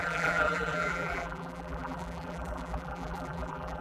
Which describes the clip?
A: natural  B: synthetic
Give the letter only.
B